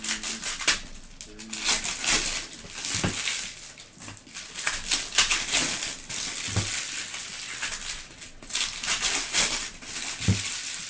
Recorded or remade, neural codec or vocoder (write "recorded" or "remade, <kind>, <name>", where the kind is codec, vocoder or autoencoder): recorded